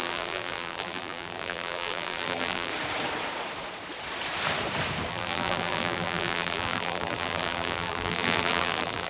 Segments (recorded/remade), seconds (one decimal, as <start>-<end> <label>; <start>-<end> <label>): 0.0-2.7 remade; 2.7-5.1 recorded; 5.1-9.1 remade